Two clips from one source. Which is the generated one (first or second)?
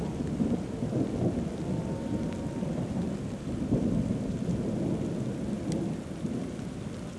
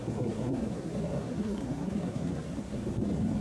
second